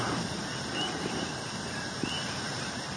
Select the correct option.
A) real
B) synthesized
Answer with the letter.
B